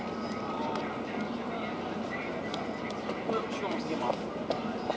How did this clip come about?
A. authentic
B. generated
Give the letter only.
A